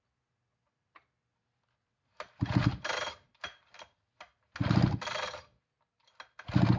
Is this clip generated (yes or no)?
no